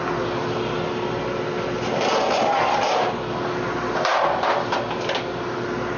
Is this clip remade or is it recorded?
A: recorded